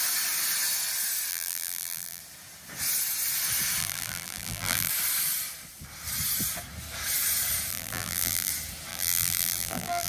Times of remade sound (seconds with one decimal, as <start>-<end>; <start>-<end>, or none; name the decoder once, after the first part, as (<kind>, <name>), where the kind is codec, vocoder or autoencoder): 1.3-2.2 (vocoder, BigVGAN v2); 3.8-4.9; 7.7-8.5; 8.9-10.1